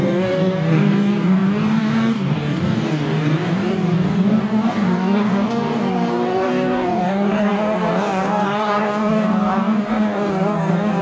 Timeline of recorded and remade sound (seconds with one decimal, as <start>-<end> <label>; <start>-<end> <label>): 0.0-11.0 remade